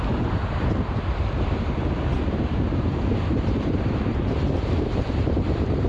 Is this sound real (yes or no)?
no